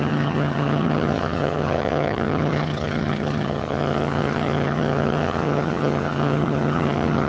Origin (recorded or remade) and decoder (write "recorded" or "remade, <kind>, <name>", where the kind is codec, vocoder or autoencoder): remade, vocoder, HiFi-GAN